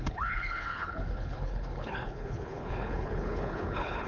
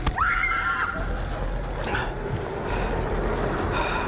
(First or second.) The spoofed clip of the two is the first